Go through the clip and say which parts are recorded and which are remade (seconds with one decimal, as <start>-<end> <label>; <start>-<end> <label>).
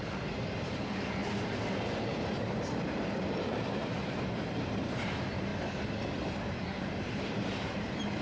0.0-5.5 remade; 5.5-6.8 recorded; 6.8-8.2 remade